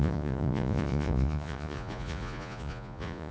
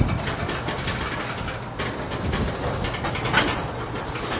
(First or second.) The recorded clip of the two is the second